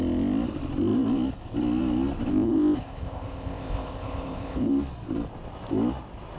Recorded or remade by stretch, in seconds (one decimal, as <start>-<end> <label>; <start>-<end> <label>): 0.0-2.3 recorded; 2.3-4.7 remade; 4.7-6.4 recorded